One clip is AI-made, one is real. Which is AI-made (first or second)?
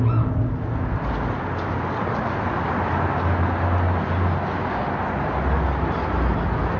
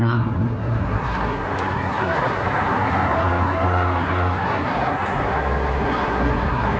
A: second